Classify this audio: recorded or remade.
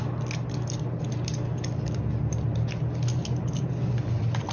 recorded